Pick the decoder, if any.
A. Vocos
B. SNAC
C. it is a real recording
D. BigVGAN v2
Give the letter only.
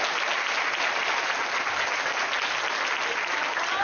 C